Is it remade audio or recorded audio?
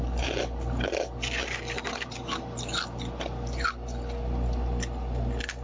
recorded